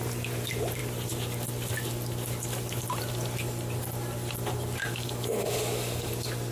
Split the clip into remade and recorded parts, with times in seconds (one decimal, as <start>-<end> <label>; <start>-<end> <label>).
0.0-4.8 recorded; 4.8-6.1 remade; 6.1-6.5 recorded